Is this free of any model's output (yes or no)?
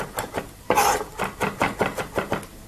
yes